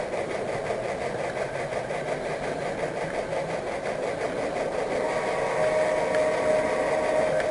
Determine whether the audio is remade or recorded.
recorded